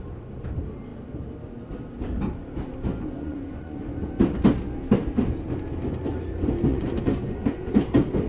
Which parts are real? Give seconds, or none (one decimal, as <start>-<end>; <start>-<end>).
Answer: 0.0-2.9; 3.8-6.7; 7.7-8.3